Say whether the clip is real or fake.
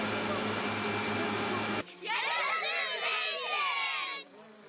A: real